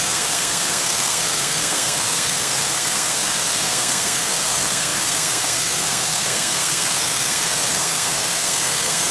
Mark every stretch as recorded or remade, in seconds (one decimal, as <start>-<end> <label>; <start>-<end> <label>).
0.0-9.1 remade